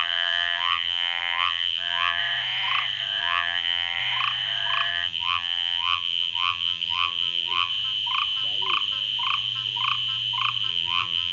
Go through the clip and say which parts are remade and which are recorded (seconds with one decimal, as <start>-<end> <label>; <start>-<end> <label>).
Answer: 0.0-2.2 remade; 2.2-3.2 recorded; 3.2-4.0 remade; 4.0-4.9 recorded; 4.9-7.7 remade; 7.7-10.7 recorded; 10.7-11.3 remade